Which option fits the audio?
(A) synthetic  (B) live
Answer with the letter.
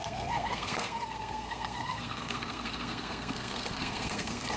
A